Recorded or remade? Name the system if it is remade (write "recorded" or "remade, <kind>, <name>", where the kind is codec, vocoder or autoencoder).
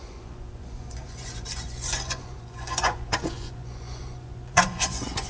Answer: remade, vocoder, Vocos